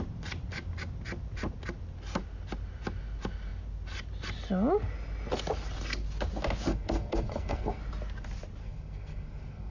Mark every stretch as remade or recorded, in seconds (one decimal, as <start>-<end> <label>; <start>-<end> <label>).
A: 0.0-6.7 recorded; 6.7-7.8 remade; 7.8-8.6 recorded; 8.6-9.7 remade